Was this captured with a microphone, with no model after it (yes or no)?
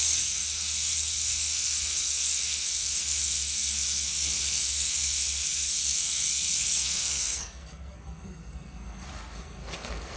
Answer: no